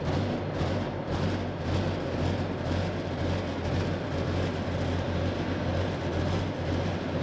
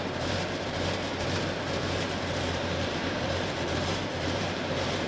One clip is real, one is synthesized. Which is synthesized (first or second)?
second